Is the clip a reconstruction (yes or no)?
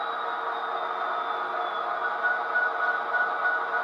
no